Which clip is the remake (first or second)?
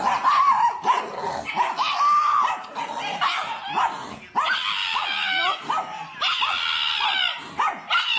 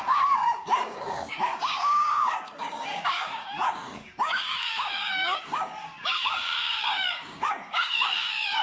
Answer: second